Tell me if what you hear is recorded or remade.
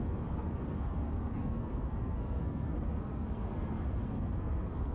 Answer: remade